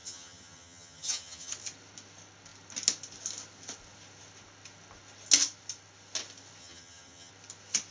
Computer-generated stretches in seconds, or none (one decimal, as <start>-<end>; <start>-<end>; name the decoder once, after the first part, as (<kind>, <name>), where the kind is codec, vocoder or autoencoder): 0.0-1.5 (vocoder, HiFi-GAN); 6.6-7.3